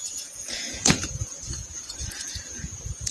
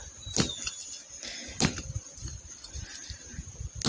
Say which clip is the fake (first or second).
first